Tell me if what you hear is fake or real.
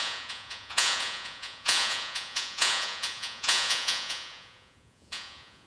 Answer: fake